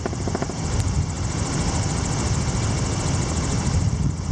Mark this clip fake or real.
real